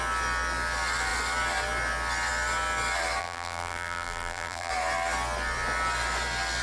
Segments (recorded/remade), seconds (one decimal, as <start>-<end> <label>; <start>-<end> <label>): 0.0-3.2 recorded; 3.2-4.7 remade; 4.7-6.6 recorded